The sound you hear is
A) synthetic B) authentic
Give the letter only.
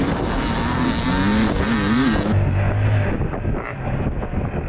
B